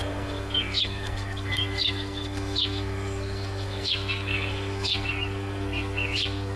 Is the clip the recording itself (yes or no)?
no